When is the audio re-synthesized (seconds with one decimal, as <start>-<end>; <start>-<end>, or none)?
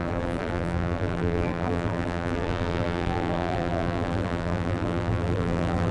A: 0.0-5.9